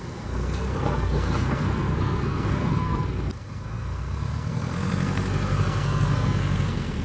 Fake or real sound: fake